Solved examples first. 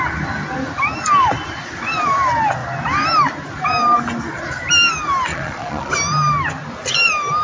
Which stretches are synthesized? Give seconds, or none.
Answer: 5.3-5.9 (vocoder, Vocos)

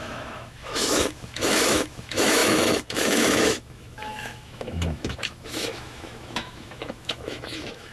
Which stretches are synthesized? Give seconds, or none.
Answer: 0.0-7.9 (autoencoder, DAC-VAE)

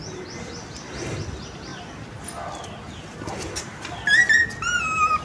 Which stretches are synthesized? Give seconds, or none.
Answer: none

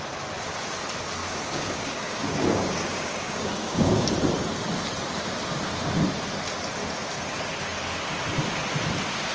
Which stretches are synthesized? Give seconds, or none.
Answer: 1.2-4.1 (codec, DAC)

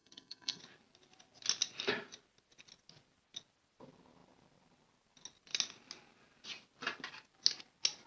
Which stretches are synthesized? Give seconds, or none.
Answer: 0.0-0.6 (codec, SNAC)

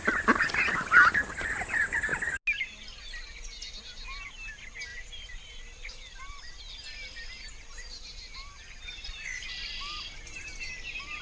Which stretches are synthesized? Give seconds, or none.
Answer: 4.9-6.5 (vocoder, BigVGAN v2); 8.2-9.2